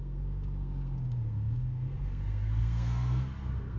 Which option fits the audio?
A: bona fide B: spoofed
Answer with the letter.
B